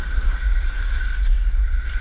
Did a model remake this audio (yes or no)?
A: no